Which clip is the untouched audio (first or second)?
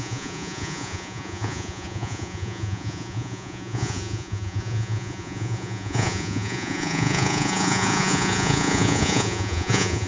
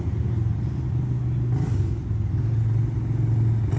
second